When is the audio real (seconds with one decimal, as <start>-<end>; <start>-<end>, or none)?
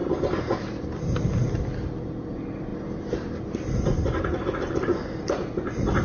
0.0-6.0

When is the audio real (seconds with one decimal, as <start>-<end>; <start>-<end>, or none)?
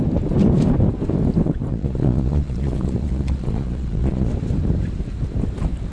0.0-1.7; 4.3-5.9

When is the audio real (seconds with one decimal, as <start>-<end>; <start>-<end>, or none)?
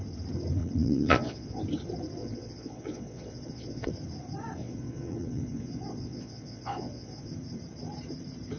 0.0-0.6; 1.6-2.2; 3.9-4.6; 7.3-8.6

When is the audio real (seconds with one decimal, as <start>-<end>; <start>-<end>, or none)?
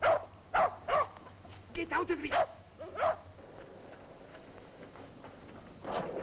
0.0-0.9; 1.7-2.2; 2.7-4.3; 5.1-6.2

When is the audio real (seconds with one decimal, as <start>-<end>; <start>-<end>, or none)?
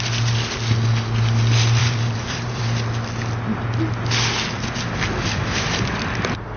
0.0-1.8; 2.6-6.6